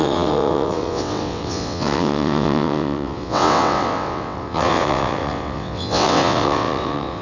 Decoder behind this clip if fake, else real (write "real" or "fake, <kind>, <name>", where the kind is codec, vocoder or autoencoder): fake, vocoder, WaveNeXt